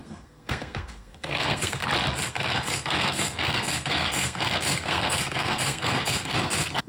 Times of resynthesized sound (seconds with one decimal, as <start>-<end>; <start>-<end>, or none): 0.0-1.8; 2.3-6.9